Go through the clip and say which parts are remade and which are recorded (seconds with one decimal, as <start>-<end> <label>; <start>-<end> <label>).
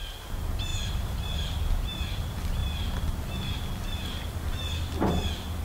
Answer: 0.0-5.6 recorded